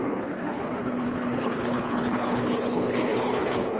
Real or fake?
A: fake